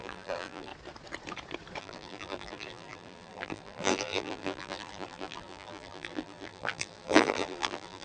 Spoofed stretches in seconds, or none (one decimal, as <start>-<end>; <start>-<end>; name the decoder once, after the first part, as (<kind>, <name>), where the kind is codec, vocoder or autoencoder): 0.0-0.7 (vocoder, BigVGAN v2); 1.8-8.0